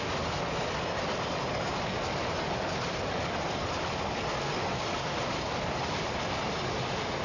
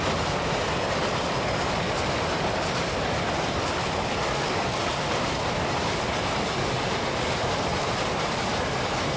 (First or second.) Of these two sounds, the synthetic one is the second